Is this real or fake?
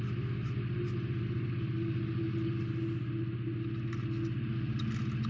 real